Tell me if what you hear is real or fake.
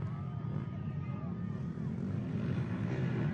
real